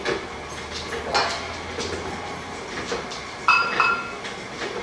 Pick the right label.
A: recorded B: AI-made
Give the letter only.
A